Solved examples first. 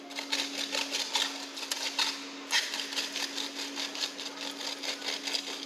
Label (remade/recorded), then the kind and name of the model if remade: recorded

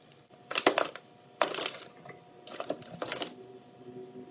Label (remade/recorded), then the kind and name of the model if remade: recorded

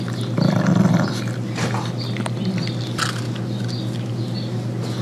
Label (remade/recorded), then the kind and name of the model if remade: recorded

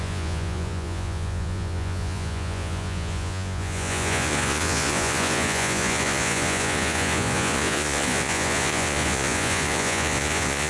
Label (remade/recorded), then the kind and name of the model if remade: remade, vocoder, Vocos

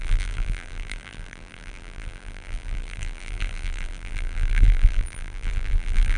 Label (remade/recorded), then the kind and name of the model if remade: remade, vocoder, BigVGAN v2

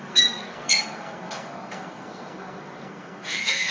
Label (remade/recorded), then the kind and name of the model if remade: remade, codec, SNAC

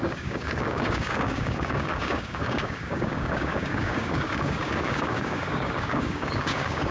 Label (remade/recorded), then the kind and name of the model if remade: remade, codec, DAC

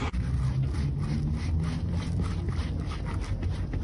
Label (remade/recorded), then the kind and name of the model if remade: recorded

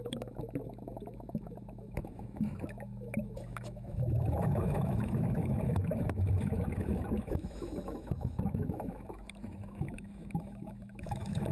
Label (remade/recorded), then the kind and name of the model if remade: remade, autoencoder, DAC-VAE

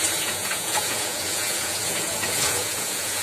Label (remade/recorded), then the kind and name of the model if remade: remade, vocoder, Vocos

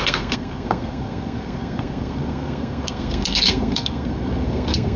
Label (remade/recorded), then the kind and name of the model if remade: remade, codec, SNAC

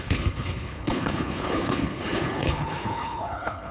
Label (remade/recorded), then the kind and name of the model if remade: remade, codec, HILCodec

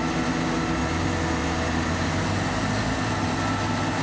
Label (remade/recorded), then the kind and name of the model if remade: recorded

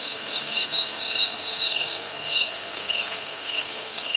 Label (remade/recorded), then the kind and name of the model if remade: remade, codec, SNAC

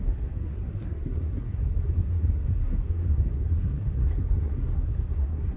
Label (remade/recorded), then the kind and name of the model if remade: remade, codec, SNAC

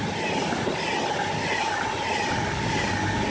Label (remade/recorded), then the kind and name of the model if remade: recorded